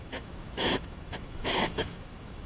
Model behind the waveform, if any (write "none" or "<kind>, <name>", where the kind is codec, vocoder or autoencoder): autoencoder, DAC-VAE